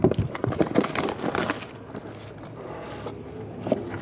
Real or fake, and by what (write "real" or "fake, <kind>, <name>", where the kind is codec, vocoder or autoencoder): real